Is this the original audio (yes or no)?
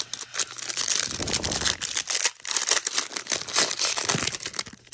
yes